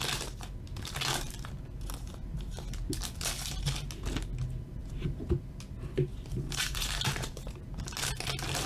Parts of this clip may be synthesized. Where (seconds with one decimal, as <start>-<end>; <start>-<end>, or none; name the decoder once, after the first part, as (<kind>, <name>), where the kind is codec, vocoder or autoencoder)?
4.8-5.3 (vocoder, BigVGAN v2); 6.1-7.6